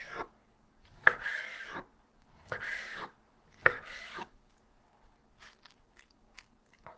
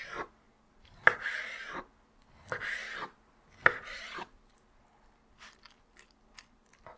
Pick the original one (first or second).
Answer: second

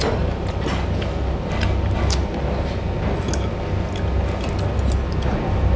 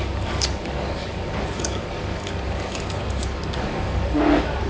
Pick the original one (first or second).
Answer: first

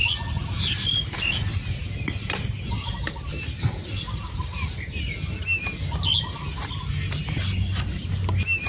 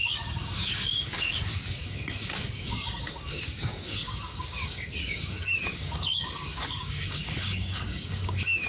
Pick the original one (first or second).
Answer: first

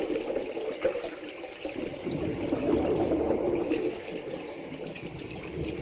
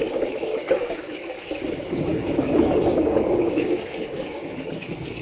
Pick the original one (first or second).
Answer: first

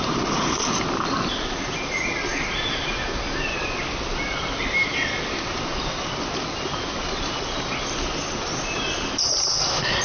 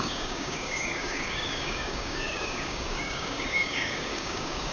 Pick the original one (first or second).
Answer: first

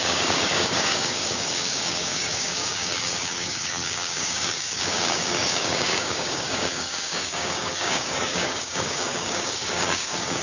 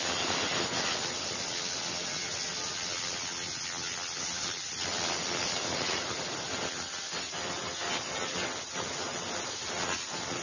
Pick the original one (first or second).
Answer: second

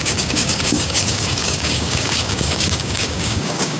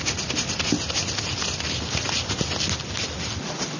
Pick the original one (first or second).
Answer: second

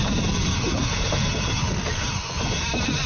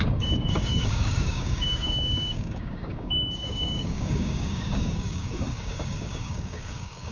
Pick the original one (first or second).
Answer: first